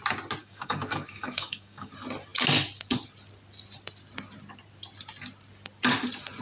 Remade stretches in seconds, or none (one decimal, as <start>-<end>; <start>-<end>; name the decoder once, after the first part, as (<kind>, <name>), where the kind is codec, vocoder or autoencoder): 0.4-1.9 (codec, DAC)